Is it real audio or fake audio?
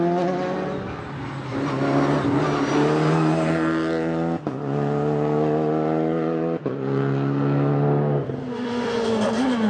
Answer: real